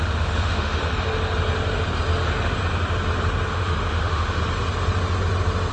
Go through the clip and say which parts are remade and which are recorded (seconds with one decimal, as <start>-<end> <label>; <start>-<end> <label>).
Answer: 0.0-0.8 remade; 0.8-3.5 recorded; 3.5-4.4 remade; 4.4-5.7 recorded